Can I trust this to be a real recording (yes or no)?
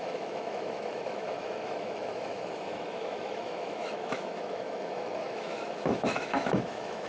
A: no